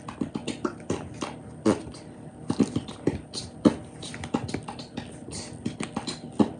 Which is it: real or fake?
real